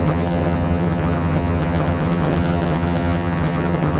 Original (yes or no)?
no